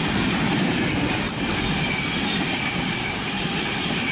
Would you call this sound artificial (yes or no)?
no